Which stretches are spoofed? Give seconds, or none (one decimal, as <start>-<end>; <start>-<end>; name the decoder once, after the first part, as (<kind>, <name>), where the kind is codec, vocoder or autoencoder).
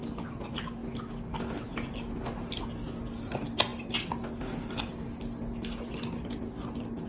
none